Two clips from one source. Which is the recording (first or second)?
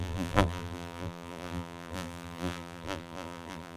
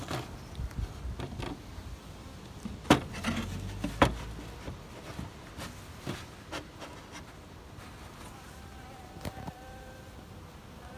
second